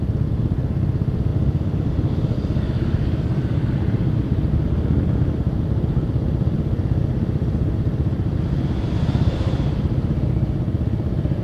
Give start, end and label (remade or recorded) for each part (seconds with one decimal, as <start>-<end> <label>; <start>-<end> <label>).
0.0-11.4 recorded